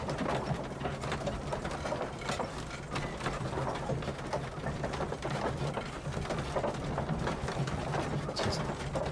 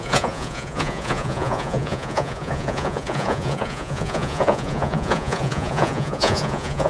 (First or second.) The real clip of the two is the first